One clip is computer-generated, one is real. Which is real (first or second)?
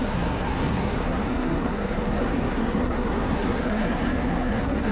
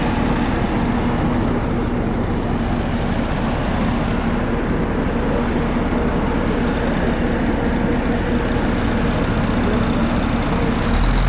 second